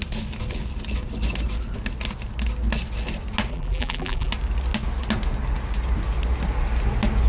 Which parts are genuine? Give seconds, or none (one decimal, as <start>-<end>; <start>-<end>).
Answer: 0.0-3.5; 4.3-7.3